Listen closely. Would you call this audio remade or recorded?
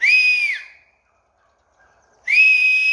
recorded